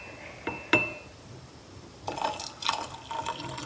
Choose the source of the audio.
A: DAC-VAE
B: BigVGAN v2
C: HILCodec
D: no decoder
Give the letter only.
D